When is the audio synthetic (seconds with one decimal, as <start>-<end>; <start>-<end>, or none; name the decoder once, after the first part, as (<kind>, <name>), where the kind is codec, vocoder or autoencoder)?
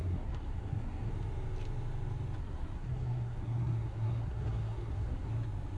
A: 0.0-1.1 (codec, SNAC); 2.4-5.3